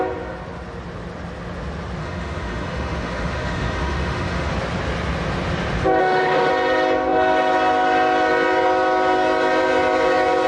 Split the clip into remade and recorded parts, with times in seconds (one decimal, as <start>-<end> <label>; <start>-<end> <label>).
0.0-2.0 recorded; 2.0-4.5 remade; 4.5-6.0 recorded; 6.0-6.5 remade; 6.5-10.5 recorded